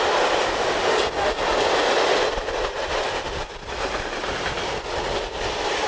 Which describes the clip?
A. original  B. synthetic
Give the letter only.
A